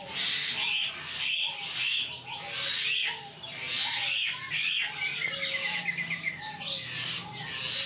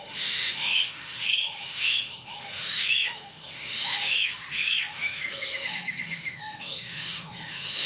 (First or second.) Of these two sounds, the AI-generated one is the second